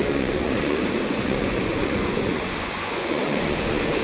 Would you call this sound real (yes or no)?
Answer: no